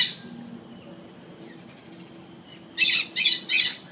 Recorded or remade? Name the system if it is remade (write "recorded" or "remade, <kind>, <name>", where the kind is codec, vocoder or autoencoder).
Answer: recorded